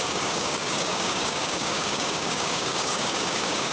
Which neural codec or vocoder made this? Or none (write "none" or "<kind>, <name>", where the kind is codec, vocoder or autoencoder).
codec, DAC